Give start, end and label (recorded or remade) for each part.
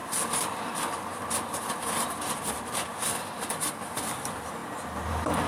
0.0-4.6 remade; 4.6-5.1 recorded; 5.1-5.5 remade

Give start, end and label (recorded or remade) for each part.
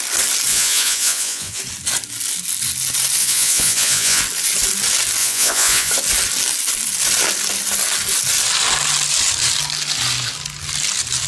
0.0-0.5 recorded; 0.5-1.6 remade; 1.6-3.2 recorded; 3.2-4.2 remade; 4.2-5.2 recorded; 5.2-5.9 remade; 5.9-11.3 recorded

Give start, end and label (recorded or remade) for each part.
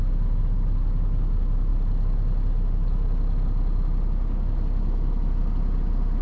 0.0-6.2 recorded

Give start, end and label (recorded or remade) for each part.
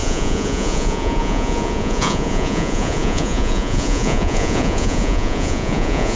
0.0-6.2 remade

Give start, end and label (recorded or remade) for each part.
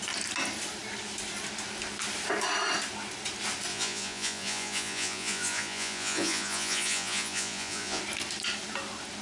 0.0-3.7 recorded; 3.7-8.0 remade; 8.0-9.2 recorded